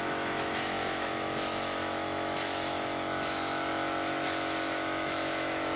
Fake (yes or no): yes